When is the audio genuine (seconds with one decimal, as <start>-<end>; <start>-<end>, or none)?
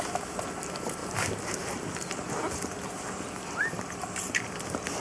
0.0-5.0